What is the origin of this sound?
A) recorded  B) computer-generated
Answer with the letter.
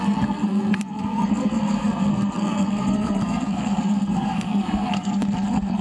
B